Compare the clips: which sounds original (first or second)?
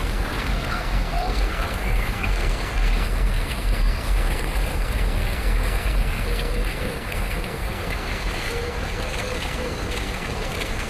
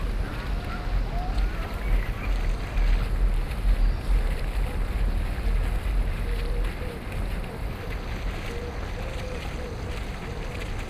second